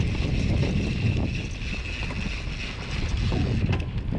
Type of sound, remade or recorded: recorded